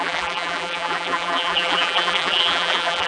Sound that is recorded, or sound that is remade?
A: remade